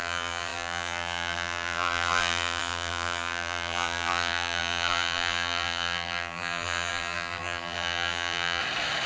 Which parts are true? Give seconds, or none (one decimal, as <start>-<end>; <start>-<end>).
8.6-9.1